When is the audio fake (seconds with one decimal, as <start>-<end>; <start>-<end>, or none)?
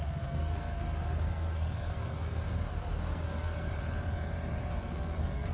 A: 0.0-3.7; 4.7-5.5